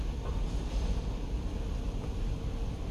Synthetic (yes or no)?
no